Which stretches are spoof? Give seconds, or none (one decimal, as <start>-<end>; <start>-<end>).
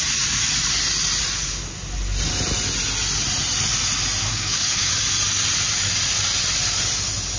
4.2-4.9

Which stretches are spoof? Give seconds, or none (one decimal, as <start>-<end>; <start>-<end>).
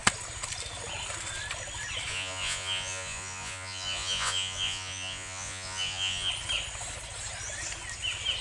2.1-6.3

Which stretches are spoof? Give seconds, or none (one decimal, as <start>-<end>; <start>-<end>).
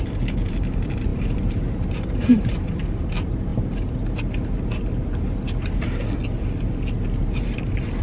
0.0-3.5; 7.2-8.0